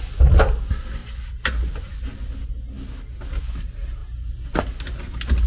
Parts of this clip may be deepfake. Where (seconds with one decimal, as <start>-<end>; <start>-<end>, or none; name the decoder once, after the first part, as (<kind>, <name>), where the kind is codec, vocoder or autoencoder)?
none